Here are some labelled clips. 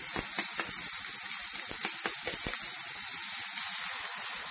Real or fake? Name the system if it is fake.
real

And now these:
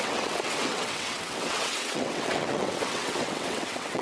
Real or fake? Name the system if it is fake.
fake, vocoder, WaveNeXt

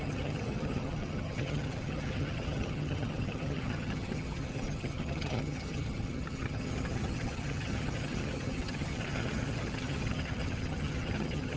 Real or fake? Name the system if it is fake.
fake, vocoder, HiFi-GAN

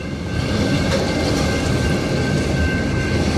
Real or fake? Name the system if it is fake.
real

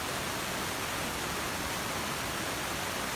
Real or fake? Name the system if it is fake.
real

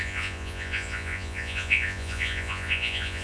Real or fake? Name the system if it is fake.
fake, vocoder, Vocos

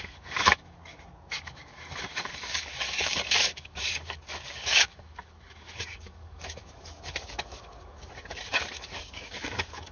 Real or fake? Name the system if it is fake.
fake, codec, DAC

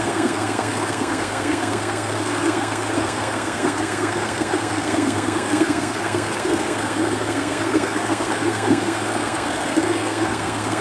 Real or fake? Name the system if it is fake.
fake, codec, SNAC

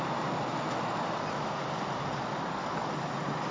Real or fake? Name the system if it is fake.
real